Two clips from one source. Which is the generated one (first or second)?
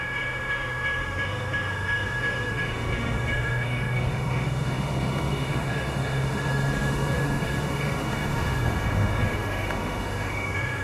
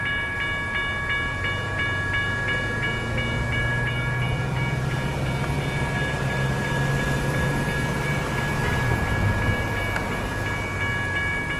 first